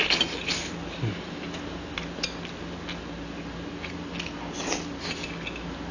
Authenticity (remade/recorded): recorded